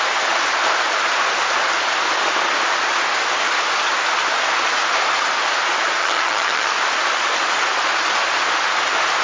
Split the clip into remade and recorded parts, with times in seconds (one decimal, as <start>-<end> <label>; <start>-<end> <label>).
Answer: 0.0-6.0 recorded; 6.0-6.7 remade; 6.7-9.2 recorded